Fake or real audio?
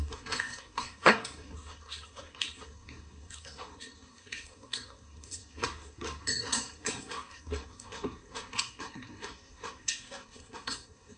fake